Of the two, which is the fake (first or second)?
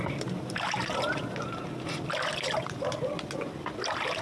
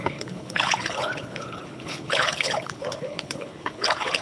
second